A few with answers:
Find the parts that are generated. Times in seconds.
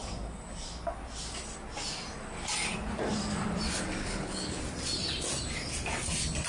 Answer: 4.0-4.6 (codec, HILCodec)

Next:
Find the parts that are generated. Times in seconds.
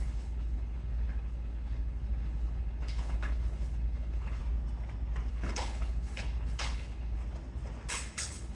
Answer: 0.0-4.4 (codec, HILCodec); 5.3-7.2; 7.9-8.5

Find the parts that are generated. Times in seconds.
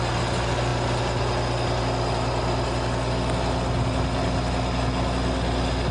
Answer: none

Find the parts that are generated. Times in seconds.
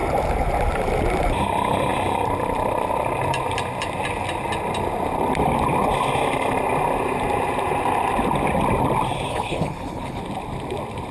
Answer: 9.3-10.2 (codec, HILCodec)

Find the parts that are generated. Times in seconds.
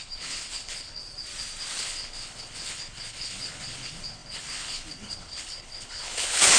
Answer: 0.0-1.0 (codec, HILCodec); 1.8-6.6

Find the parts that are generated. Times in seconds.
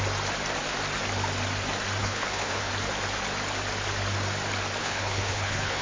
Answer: 2.0-2.7 (codec, HILCodec); 4.8-5.8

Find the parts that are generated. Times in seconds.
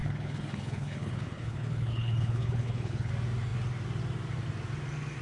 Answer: 0.0-3.1 (codec, HILCodec)